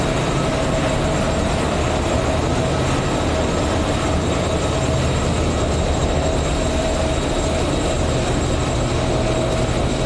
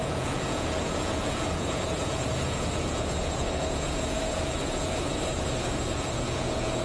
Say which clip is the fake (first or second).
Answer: second